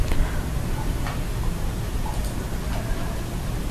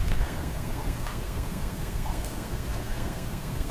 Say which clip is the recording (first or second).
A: first